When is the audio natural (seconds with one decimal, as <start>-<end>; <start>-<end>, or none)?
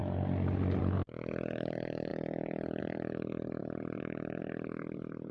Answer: 0.0-0.8